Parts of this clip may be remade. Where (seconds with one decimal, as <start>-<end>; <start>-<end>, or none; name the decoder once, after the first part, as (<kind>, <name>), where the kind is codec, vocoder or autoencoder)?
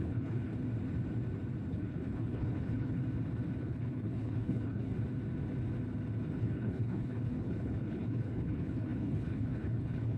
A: 0.0-0.5 (codec, HILCodec); 1.7-3.0; 3.6-4.9; 6.4-10.2